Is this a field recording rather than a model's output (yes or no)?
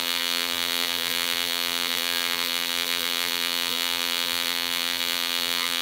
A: no